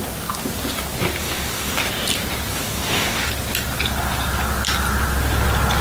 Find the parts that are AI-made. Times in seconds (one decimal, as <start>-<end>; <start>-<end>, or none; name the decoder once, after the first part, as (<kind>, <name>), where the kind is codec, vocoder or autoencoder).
1.2-1.8 (codec, DAC); 2.5-3.3